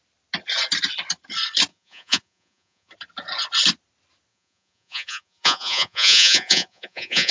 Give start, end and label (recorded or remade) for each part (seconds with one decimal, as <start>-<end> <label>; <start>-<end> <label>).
0.0-1.7 recorded; 1.7-2.9 remade; 2.9-4.3 recorded; 4.3-7.3 remade